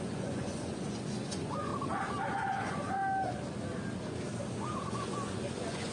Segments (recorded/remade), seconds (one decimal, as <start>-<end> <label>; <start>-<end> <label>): 0.0-1.7 remade; 1.7-2.3 recorded; 2.3-3.0 remade; 3.0-4.5 recorded; 4.5-5.9 remade